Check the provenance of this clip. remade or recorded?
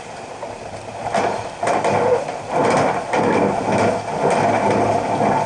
recorded